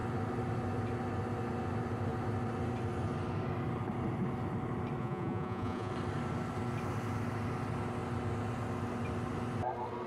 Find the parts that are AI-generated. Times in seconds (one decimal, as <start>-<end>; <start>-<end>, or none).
5.0-5.9